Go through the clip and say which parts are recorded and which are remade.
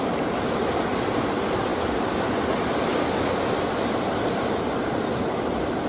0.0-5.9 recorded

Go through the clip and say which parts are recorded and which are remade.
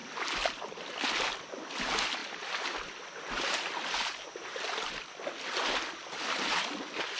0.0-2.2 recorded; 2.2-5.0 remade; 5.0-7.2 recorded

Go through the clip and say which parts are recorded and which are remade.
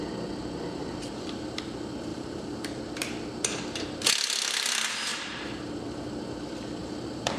0.0-0.8 recorded; 0.8-1.6 remade; 1.6-2.1 recorded; 2.1-2.8 remade; 2.8-5.1 recorded; 5.1-5.7 remade; 5.7-6.8 recorded; 6.8-7.4 remade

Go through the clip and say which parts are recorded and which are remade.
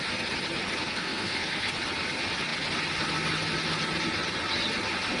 0.0-0.9 recorded; 0.9-1.7 remade; 1.7-5.2 recorded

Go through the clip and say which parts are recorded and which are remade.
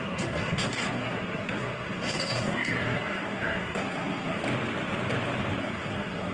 0.0-4.4 remade; 4.4-5.6 recorded; 5.6-6.3 remade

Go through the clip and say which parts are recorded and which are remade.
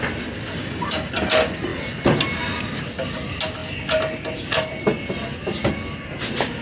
0.0-0.6 recorded; 0.6-1.1 remade; 1.1-6.6 recorded